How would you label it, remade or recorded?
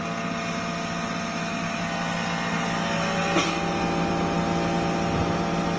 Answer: recorded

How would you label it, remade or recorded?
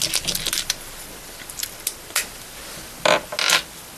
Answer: recorded